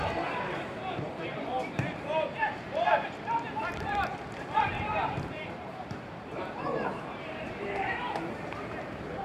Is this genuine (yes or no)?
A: no